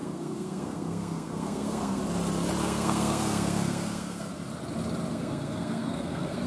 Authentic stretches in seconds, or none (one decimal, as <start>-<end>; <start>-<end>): 2.0-2.6; 4.3-5.1